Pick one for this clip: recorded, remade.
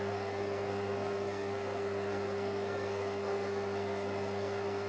remade